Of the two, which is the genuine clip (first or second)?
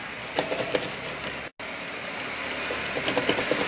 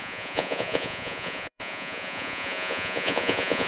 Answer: first